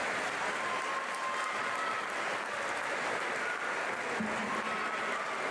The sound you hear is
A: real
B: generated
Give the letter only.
A